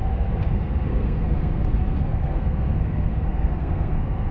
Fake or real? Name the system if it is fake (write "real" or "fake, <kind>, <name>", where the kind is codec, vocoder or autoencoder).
fake, codec, SNAC